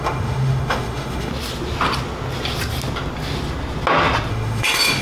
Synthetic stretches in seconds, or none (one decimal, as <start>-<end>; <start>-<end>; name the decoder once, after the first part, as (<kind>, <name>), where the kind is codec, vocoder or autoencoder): 0.0-1.3 (autoencoder, DAC-VAE); 4.3-5.0